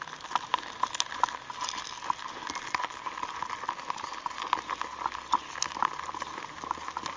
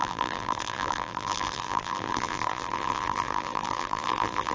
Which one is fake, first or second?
second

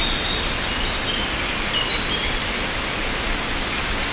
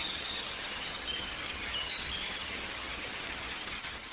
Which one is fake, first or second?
second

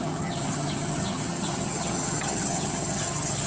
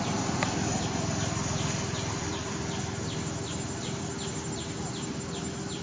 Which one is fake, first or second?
first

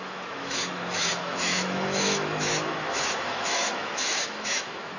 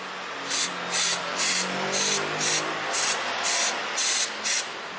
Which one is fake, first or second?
first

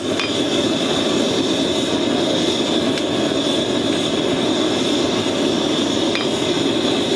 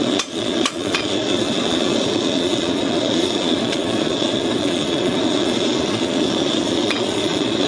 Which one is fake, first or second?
second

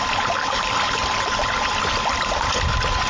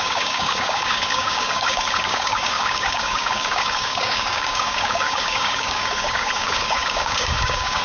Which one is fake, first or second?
second